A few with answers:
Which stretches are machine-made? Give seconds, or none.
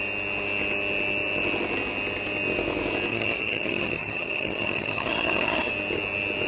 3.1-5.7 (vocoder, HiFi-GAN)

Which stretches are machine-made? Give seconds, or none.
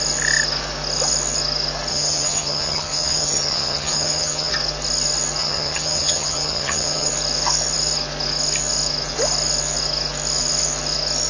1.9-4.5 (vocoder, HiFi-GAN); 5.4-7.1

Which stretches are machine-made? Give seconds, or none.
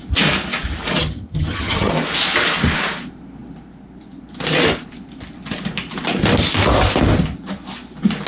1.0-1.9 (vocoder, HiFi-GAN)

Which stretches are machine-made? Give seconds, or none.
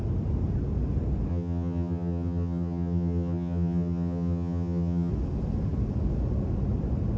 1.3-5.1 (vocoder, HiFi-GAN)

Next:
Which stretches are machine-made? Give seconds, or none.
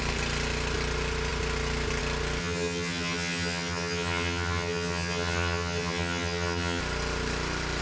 2.4-6.8 (vocoder, HiFi-GAN)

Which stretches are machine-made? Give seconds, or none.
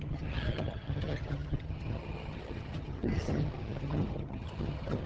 0.0-5.1 (vocoder, HiFi-GAN)